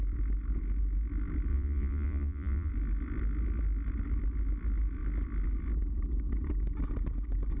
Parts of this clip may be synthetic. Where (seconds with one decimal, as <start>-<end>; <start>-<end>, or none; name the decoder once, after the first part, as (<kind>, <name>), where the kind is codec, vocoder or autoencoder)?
1.5-2.7 (vocoder, Vocos)

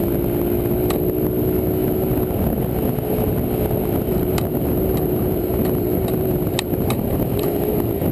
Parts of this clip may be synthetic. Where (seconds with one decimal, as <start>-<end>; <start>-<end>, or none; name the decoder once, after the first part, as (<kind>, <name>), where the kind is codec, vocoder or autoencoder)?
4.1-7.6 (vocoder, BigVGAN v2)

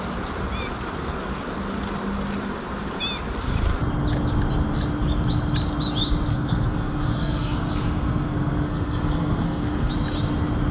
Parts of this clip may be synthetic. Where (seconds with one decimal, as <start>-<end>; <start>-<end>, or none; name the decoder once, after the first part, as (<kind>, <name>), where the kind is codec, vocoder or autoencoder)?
6.3-9.9 (codec, SNAC)